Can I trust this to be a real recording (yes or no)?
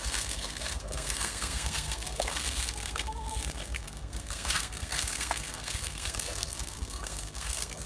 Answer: no